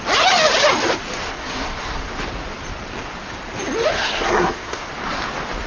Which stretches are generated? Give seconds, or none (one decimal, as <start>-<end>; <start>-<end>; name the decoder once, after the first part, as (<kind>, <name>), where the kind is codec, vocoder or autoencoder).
1.3-2.1 (codec, SNAC); 3.9-4.9